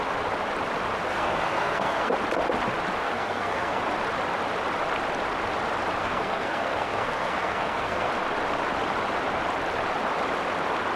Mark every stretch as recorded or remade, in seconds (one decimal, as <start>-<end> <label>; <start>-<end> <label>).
0.0-1.1 recorded; 1.1-2.1 remade; 2.1-3.0 recorded; 3.0-3.8 remade; 3.8-6.0 recorded; 6.0-8.1 remade; 8.1-11.0 recorded